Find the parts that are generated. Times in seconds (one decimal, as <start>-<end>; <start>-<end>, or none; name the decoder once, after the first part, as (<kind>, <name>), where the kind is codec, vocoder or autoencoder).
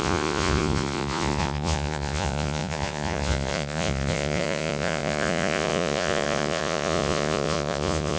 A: 0.0-8.2 (vocoder, Vocos)